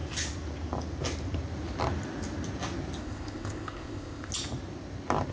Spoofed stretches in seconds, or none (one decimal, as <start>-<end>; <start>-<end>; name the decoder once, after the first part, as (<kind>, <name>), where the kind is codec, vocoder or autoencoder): 3.0-4.3 (codec, ZipCodec)